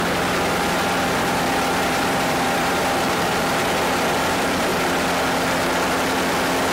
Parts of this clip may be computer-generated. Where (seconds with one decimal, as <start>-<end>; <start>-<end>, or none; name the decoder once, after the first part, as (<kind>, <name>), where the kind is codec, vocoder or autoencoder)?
0.0-4.7 (vocoder, BigVGAN v2); 6.2-6.7